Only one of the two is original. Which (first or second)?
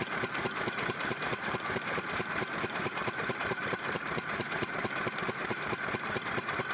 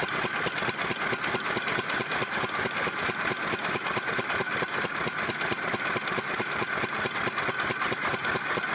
second